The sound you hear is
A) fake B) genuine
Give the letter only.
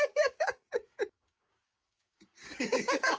A